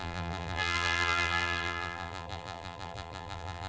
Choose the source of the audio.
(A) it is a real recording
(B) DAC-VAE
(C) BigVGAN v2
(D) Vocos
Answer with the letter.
C